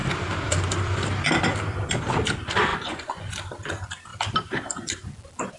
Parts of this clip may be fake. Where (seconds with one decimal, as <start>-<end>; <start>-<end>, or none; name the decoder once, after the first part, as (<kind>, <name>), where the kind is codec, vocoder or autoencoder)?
2.7-3.3 (vocoder, Vocos)